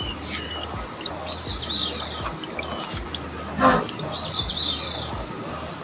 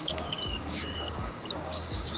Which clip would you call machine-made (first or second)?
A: second